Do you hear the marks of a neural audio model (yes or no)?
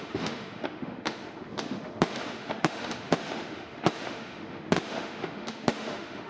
yes